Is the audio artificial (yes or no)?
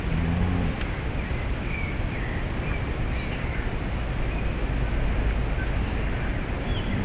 no